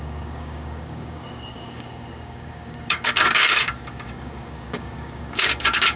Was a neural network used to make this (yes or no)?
yes